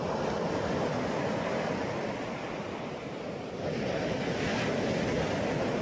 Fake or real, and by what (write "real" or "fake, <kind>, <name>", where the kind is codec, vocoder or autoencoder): real